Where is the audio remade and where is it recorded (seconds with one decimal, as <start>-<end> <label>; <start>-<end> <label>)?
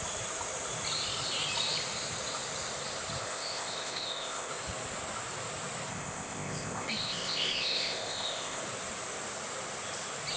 0.0-3.2 recorded; 3.2-4.5 remade; 4.5-5.9 recorded; 5.9-8.6 remade; 8.6-10.4 recorded